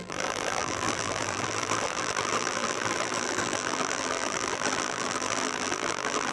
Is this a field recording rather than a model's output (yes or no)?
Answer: no